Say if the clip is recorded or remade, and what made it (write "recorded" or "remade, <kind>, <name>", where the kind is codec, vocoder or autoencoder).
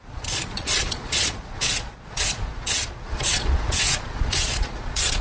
remade, vocoder, Vocos